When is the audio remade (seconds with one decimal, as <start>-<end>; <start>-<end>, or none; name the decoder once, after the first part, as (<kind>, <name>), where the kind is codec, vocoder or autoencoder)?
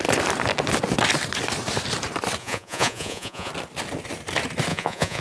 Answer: 2.4-3.5 (vocoder, Vocos); 4.7-5.2